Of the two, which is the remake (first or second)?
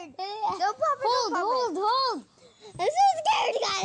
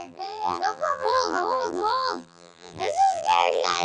second